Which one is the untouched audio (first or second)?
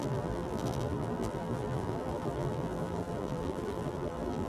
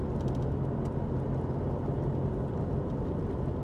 second